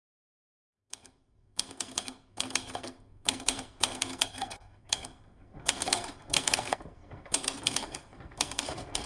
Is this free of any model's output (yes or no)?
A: no